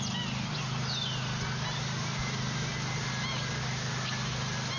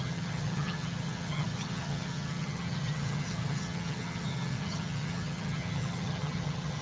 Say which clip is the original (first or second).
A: first